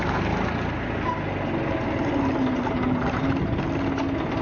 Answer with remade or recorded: recorded